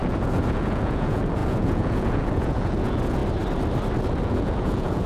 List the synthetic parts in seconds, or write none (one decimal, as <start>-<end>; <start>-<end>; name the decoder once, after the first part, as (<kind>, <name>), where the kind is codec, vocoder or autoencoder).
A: 0.0-3.2 (vocoder, Vocos); 4.2-5.1